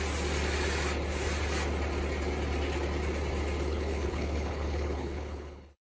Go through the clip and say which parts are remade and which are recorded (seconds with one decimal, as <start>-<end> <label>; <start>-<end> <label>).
0.0-3.7 recorded; 3.7-5.9 remade